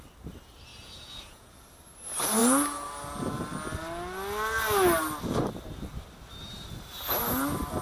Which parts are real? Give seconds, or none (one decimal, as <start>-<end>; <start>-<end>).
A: 0.0-0.7; 1.5-7.8